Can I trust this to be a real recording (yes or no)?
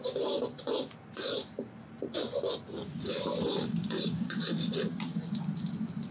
yes